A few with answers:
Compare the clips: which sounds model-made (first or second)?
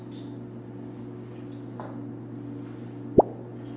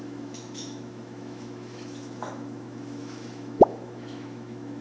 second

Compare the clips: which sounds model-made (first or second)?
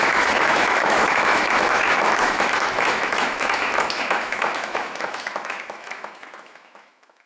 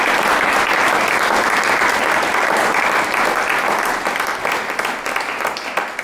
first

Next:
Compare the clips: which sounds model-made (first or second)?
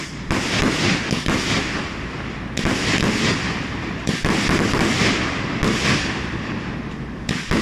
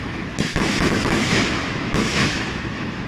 second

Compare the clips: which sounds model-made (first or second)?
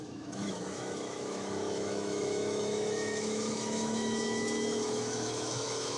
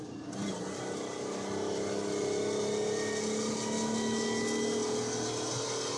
first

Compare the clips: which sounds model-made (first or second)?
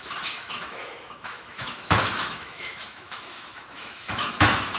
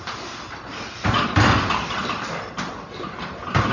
first